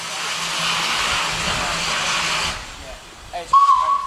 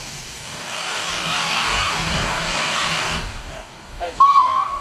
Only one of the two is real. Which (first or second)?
first